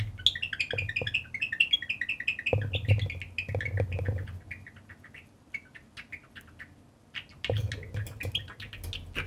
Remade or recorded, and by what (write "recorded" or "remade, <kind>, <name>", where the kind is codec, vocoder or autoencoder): recorded